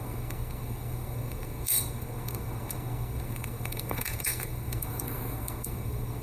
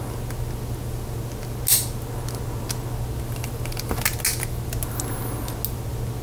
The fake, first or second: first